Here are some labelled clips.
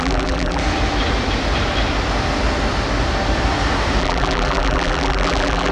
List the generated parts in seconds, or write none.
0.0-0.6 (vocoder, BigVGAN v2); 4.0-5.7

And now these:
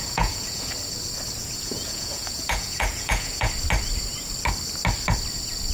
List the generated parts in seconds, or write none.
0.0-0.7 (vocoder, Vocos); 1.4-3.5

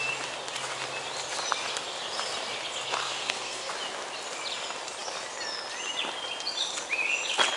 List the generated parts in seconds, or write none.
3.0-3.7 (codec, SNAC)

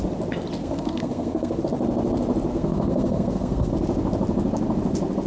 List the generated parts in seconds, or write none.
0.6-1.6 (codec, SNAC); 2.5-3.7